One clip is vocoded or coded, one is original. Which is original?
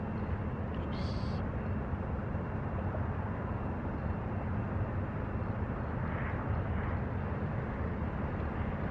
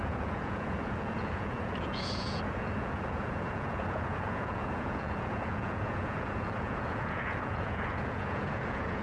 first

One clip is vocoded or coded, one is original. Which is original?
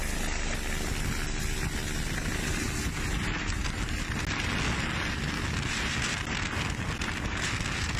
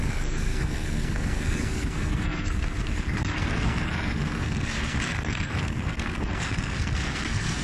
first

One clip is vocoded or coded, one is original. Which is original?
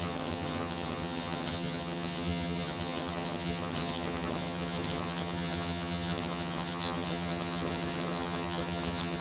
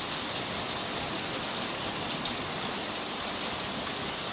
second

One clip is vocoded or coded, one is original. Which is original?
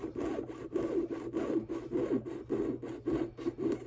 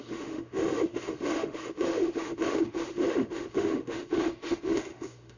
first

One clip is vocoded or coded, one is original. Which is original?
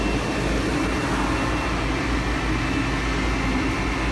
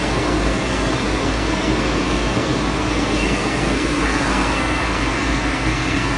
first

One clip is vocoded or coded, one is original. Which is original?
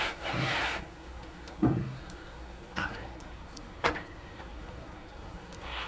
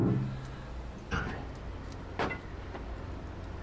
second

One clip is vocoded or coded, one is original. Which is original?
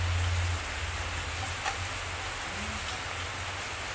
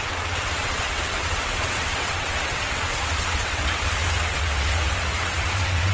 first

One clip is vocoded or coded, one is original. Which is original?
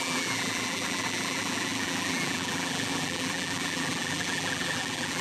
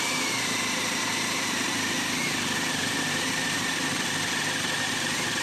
second